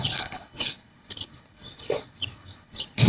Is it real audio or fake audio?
fake